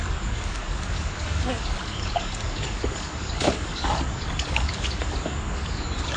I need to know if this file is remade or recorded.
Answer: remade